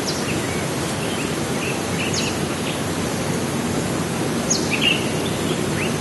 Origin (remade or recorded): recorded